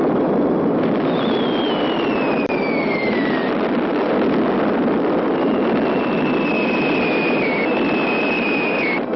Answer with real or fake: real